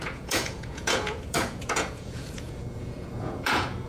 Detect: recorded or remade remade